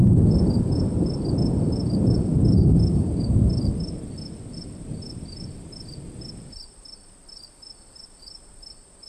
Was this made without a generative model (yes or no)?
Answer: no